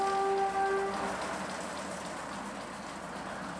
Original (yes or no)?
yes